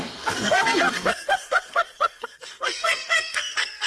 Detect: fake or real fake